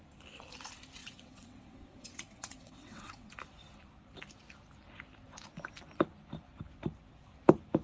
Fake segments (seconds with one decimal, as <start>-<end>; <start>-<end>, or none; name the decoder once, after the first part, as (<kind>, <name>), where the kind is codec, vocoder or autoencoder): 1.0-3.3 (vocoder, WaveNeXt)